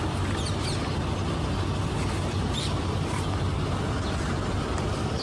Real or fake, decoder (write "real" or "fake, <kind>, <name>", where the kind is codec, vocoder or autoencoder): real